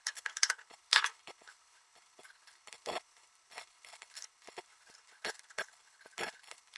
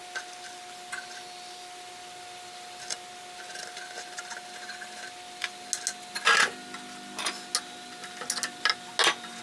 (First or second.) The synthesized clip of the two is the first